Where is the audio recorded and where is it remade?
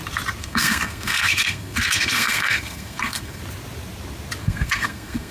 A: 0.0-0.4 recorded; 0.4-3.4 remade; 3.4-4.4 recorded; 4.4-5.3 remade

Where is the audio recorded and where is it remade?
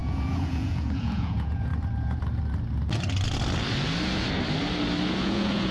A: 0.0-1.7 remade; 1.7-5.1 recorded; 5.1-5.7 remade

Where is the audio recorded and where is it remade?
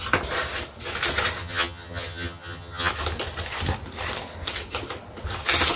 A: 0.0-1.4 recorded; 1.4-2.9 remade; 2.9-5.8 recorded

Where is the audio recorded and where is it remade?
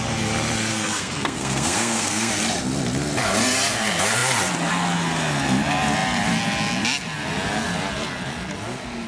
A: 0.0-0.7 recorded; 0.7-2.3 remade; 2.3-9.1 recorded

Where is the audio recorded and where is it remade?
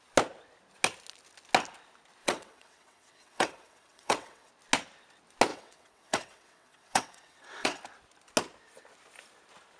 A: 0.0-2.2 recorded; 2.2-4.5 remade; 4.5-5.5 recorded; 5.5-7.8 remade; 7.8-9.8 recorded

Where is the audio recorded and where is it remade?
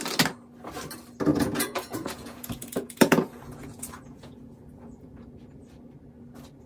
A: 0.0-1.3 recorded; 1.3-5.3 remade; 5.3-6.7 recorded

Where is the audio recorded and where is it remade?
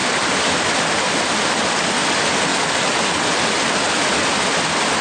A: 0.0-1.6 remade; 1.6-5.0 recorded